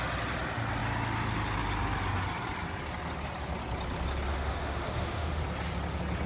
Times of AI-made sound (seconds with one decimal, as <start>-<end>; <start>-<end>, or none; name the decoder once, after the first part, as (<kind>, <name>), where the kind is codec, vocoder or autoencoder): 4.3-5.4 (autoencoder, DAC-VAE)